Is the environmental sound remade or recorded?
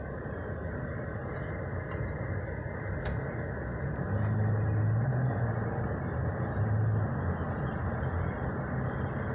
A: recorded